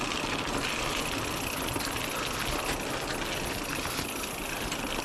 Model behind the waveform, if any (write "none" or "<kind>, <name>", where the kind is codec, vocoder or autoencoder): none